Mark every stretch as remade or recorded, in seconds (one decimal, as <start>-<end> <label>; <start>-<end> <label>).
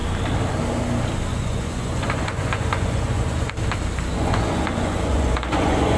0.0-1.3 recorded; 1.3-3.5 remade; 3.5-4.1 recorded; 4.1-6.0 remade